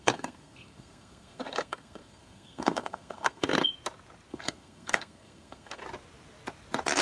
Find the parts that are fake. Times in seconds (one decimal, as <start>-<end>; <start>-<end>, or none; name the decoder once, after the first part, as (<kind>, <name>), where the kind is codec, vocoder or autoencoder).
0.0-3.6 (codec, SNAC); 4.3-5.8